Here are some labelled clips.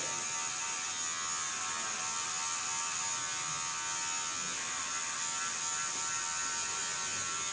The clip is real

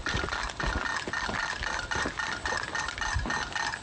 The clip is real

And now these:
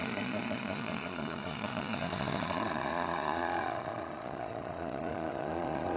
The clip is fake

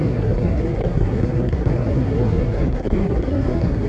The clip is fake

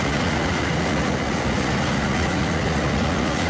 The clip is fake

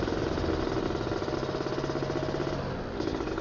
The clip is real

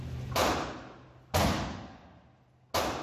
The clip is real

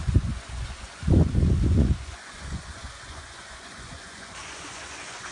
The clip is fake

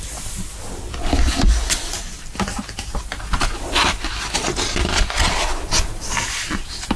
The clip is real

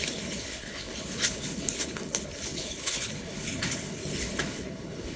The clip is fake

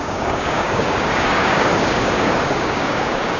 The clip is fake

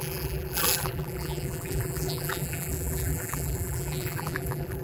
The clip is fake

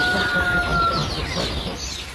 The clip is real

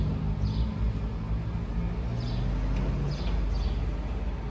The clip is real